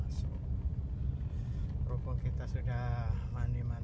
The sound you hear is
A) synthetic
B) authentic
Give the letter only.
B